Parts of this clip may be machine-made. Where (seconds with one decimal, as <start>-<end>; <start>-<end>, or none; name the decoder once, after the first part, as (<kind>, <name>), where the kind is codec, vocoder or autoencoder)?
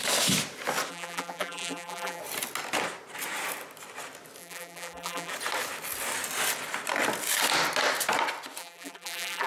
0.9-2.2 (vocoder, BigVGAN v2); 4.4-5.3; 8.6-9.5